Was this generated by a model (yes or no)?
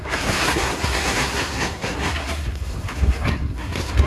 yes